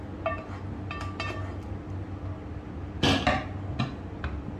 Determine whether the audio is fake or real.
real